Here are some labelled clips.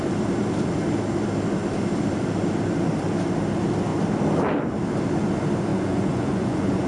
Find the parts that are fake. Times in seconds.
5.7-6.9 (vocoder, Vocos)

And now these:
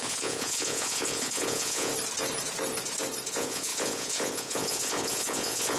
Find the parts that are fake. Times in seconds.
0.0-1.9 (vocoder, Vocos); 3.3-5.8

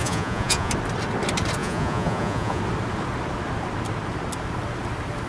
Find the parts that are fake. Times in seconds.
0.0-0.7 (vocoder, Vocos); 1.6-2.6

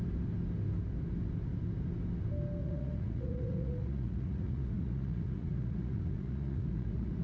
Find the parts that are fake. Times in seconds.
2.6-7.2 (vocoder, Vocos)

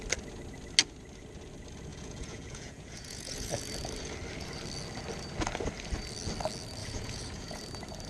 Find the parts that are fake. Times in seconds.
1.9-3.6 (vocoder, Vocos); 6.8-7.6